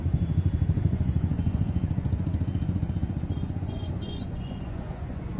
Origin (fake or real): fake